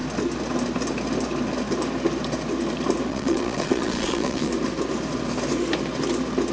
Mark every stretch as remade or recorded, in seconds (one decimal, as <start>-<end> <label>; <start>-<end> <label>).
0.0-3.1 recorded; 3.1-4.5 remade; 4.5-6.5 recorded